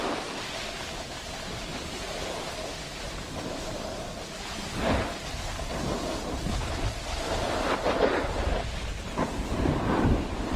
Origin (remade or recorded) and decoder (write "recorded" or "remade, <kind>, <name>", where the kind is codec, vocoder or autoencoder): recorded